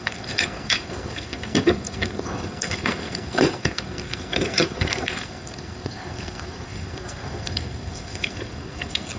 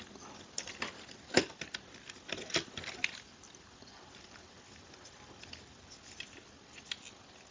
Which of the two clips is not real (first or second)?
first